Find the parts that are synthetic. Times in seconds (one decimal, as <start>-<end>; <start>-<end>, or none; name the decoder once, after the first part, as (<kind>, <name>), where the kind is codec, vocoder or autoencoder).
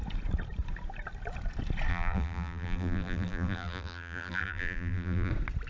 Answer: 1.9-5.3 (vocoder, BigVGAN v2)